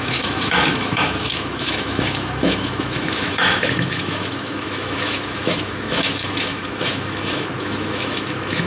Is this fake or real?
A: fake